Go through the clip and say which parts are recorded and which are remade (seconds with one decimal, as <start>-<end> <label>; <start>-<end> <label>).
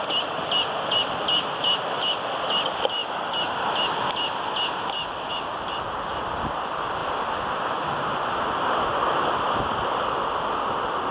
0.0-11.1 recorded